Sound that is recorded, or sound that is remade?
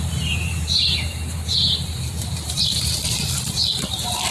remade